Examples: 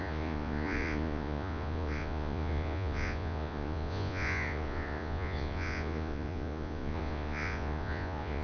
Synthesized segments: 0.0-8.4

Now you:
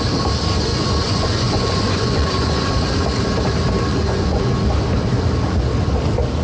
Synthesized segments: 0.7-2.7; 3.9-4.5

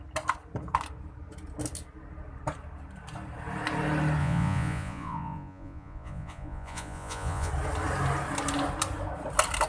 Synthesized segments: 4.2-7.5